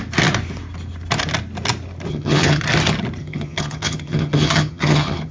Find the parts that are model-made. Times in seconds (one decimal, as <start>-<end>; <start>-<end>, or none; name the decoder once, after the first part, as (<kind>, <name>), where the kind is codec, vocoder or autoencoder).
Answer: 2.1-2.6 (vocoder, HiFi-GAN); 3.2-5.3